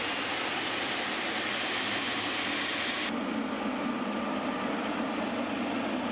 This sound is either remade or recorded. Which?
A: recorded